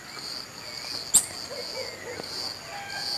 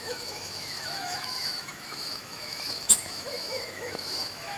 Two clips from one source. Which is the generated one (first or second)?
second